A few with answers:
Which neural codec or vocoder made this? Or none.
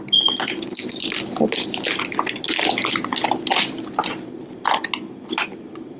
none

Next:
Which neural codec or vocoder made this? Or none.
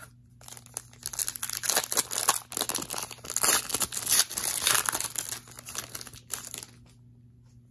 none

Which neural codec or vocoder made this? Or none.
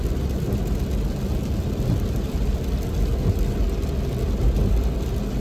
none